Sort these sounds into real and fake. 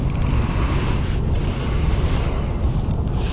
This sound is fake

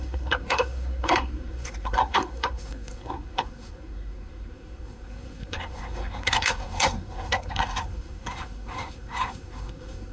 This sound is fake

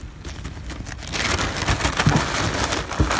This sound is real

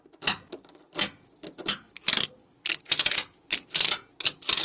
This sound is real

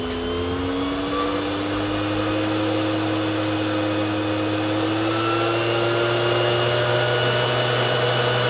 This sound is real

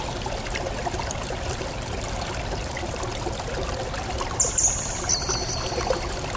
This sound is real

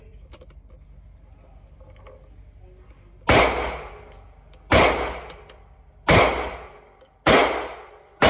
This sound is real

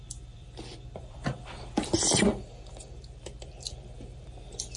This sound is fake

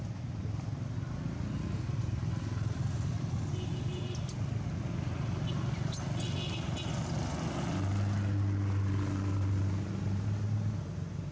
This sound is real